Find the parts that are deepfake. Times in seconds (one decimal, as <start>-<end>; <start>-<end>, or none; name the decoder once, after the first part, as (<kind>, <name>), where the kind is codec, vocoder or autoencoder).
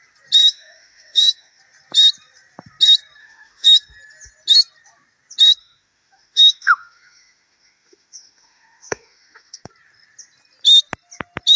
0.4-1.6 (autoencoder, DAC-VAE); 3.2-3.8; 5.6-9.7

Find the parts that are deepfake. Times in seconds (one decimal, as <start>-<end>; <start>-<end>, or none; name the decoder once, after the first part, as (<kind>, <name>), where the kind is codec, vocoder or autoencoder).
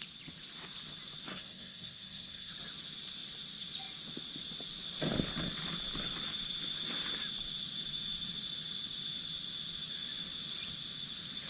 1.3-2.5 (codec, SNAC)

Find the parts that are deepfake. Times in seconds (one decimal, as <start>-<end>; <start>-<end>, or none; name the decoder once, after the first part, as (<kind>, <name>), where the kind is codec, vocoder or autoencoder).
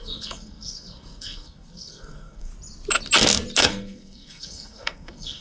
0.0-2.5 (codec, SNAC); 3.6-5.4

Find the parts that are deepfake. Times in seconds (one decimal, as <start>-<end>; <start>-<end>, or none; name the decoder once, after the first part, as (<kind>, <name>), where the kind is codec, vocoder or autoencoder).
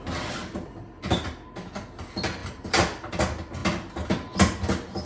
none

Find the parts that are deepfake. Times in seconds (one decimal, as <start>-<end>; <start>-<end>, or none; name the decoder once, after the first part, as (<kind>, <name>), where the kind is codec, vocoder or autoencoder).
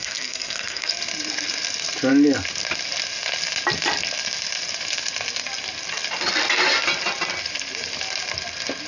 0.0-0.9 (codec, SNAC)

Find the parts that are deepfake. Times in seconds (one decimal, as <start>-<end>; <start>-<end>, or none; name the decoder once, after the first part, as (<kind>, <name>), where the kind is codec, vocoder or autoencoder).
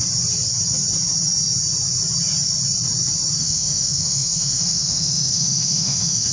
3.4-6.3 (autoencoder, DAC-VAE)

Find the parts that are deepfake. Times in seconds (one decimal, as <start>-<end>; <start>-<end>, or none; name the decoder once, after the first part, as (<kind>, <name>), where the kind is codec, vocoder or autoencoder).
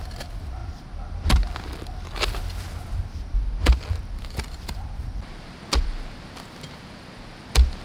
none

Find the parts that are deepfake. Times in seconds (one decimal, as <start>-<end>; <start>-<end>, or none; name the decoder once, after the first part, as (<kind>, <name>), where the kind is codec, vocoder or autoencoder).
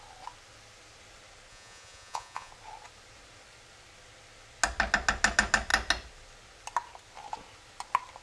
1.5-2.5 (vocoder, Vocos)